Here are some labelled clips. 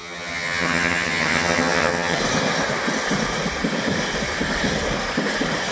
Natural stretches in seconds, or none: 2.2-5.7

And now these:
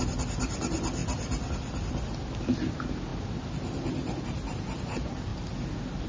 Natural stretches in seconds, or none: 0.0-6.1

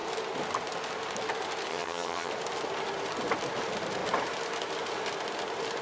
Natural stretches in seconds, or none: 0.0-1.7; 2.3-5.8

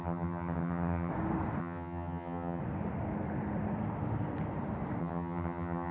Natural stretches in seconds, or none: 1.1-1.6; 2.6-5.0

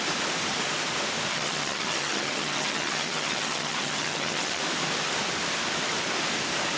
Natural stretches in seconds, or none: 0.0-1.3; 4.6-6.8

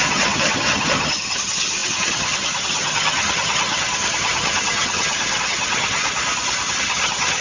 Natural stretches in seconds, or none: 6.0-6.8

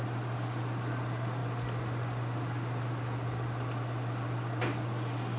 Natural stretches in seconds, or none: 0.0-5.4

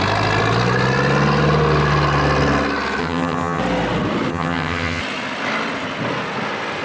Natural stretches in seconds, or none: 0.0-3.0; 3.6-4.3; 5.0-6.8